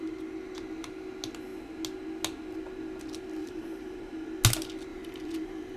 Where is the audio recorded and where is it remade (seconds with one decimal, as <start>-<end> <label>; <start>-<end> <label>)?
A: 0.0-3.4 recorded; 3.4-4.1 remade; 4.1-4.9 recorded; 4.9-5.8 remade